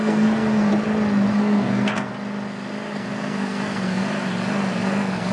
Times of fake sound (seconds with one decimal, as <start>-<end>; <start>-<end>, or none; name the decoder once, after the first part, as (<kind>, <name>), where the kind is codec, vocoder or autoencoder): 0.0-0.7 (codec, SNAC); 1.3-2.1; 2.9-4.0; 4.7-5.3